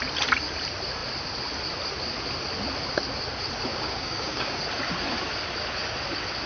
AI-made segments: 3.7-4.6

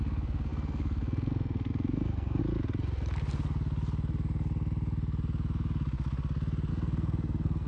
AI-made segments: 0.0-2.4; 6.7-7.7

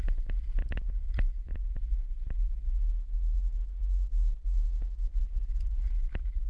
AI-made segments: 5.2-5.9

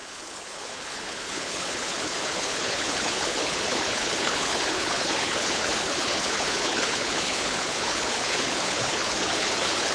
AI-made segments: 0.0-9.9

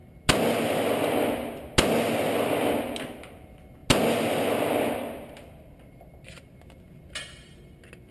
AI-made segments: none

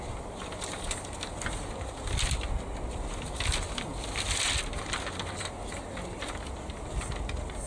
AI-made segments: none